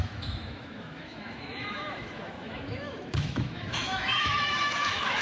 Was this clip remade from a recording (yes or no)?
yes